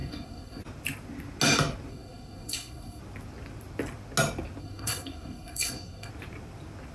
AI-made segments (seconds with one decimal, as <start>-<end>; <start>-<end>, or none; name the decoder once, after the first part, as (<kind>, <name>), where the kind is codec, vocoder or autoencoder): 0.0-0.6 (codec, SNAC); 1.9-3.0; 4.6-6.1